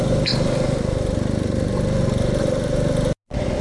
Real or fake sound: real